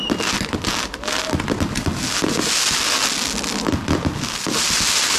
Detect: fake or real real